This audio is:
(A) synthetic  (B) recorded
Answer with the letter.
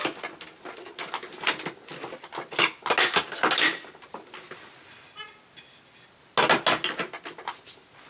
B